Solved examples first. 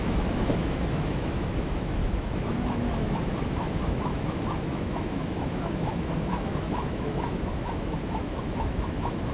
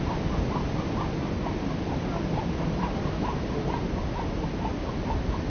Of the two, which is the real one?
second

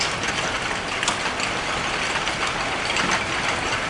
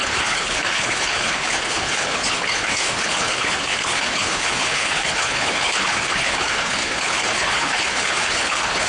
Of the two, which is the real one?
first